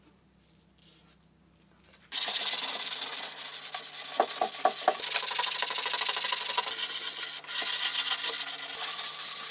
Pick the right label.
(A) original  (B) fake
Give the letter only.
A